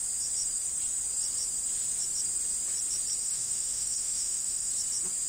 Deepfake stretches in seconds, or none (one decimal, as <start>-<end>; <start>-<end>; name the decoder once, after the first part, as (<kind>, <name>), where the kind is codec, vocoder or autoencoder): 3.2-4.7 (autoencoder, DAC-VAE)